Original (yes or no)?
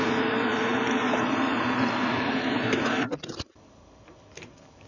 no